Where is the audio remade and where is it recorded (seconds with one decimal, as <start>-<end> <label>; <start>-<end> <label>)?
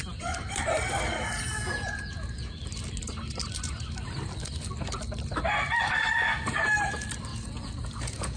0.0-1.5 recorded; 1.5-2.6 remade; 2.6-7.3 recorded; 7.3-8.4 remade